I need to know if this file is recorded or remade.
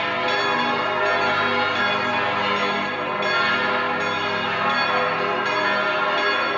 recorded